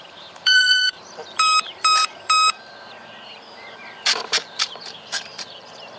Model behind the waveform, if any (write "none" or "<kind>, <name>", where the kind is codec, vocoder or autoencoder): vocoder, BigVGAN v2